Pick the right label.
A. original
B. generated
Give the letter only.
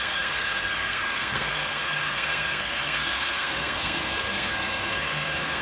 B